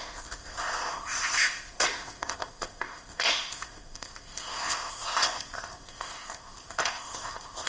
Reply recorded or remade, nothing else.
remade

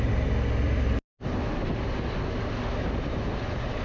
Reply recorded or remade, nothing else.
recorded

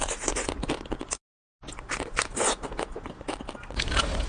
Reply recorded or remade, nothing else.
recorded